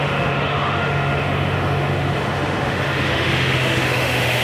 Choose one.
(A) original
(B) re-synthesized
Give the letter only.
B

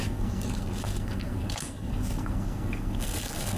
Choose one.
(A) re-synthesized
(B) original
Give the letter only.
A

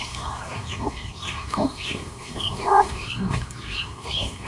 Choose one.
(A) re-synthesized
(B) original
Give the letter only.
A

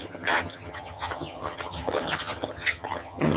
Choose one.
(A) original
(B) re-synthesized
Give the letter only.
B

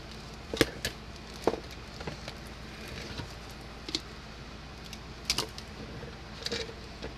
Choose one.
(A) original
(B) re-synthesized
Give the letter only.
A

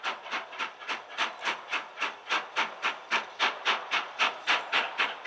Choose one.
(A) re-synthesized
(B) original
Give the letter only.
B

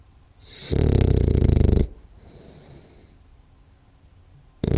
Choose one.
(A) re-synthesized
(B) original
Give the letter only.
B